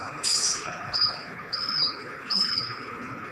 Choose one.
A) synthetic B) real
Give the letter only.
A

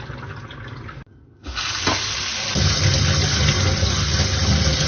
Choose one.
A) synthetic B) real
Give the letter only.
B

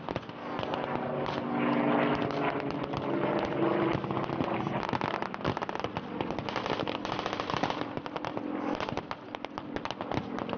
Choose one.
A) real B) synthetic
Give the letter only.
A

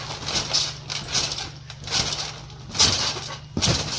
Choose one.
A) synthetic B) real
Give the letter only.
B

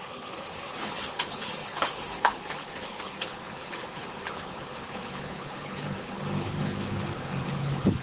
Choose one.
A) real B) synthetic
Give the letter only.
B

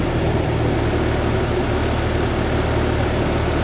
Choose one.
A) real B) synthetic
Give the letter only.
A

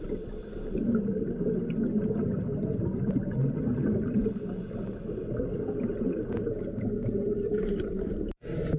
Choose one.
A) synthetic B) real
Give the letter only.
B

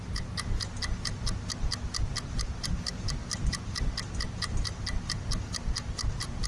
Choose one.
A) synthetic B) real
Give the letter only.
B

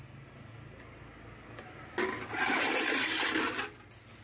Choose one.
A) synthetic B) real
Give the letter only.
B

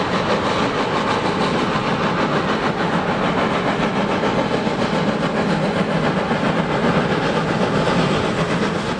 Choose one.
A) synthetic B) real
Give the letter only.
B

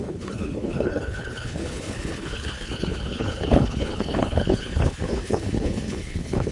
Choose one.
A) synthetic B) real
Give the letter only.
A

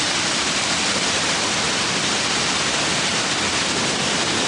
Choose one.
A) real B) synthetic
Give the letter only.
A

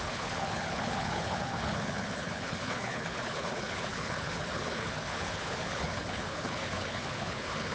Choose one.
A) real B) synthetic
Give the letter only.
B